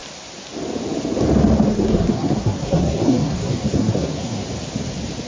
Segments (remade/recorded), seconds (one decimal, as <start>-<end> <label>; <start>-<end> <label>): 0.0-1.7 recorded; 1.7-4.4 remade; 4.4-5.3 recorded